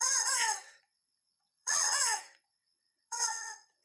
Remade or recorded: remade